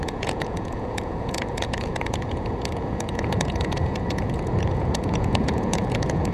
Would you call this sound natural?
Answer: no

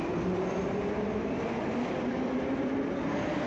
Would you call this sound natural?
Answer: yes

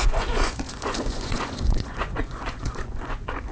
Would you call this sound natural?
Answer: no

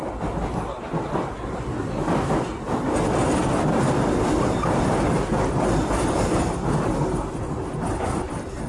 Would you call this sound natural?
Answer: yes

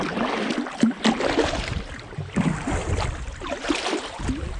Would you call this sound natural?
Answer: yes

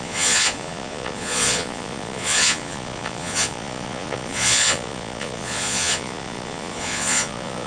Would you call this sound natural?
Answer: no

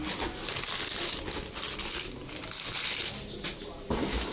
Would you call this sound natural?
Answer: yes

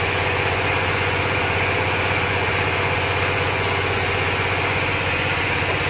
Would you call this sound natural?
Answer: no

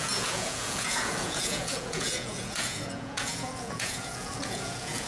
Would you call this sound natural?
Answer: no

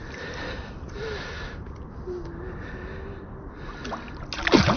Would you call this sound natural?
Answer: yes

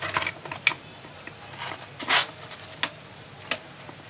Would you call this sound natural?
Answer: yes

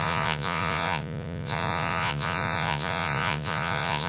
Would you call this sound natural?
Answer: no